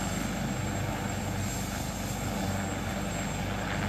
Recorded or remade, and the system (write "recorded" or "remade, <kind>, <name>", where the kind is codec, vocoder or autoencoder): recorded